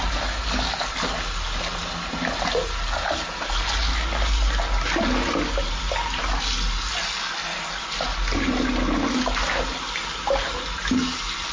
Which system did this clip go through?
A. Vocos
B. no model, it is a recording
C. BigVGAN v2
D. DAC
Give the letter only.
B